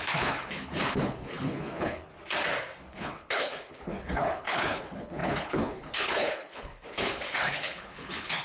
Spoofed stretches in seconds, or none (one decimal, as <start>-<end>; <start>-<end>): 0.0-2.1; 2.9-8.4